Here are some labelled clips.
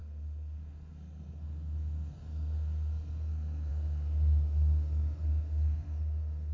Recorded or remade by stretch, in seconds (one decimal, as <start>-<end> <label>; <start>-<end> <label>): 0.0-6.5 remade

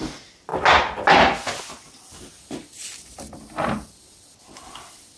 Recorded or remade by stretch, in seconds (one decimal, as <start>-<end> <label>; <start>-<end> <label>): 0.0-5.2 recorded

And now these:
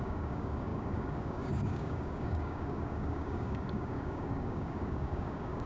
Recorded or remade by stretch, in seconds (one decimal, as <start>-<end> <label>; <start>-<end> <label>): 0.0-5.7 remade